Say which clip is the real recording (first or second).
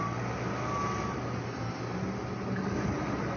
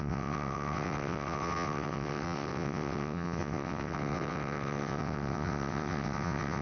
first